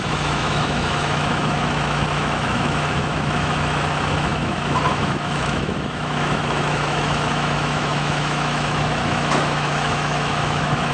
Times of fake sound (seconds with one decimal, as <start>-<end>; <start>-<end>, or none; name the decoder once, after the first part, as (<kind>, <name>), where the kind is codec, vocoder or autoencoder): 0.0-10.9 (autoencoder, DAC-VAE)